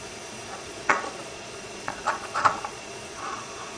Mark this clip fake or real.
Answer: fake